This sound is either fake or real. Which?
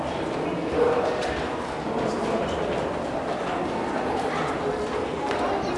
real